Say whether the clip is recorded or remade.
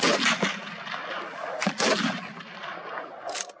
recorded